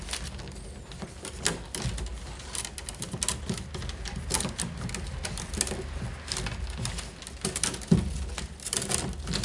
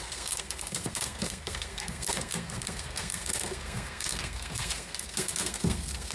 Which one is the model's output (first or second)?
second